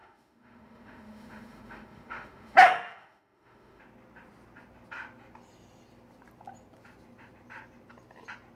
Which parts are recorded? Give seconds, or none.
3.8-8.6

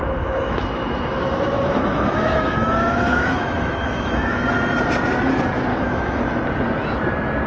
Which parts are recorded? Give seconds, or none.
4.5-5.7; 6.2-7.5

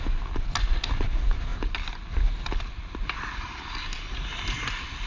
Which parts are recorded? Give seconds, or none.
0.0-5.1

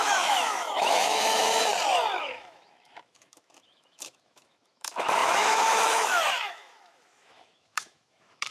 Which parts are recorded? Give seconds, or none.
1.7-2.2

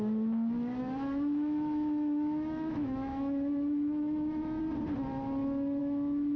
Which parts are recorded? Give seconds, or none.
0.0-0.8; 4.6-5.8

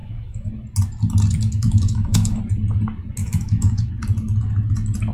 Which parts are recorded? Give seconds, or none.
0.5-1.6; 2.4-3.2; 3.9-5.1

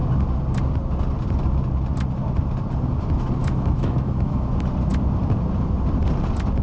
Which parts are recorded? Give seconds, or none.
0.0-3.4; 4.5-6.6

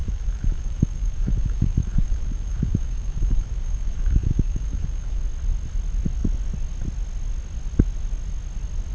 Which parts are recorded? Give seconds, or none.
5.2-8.9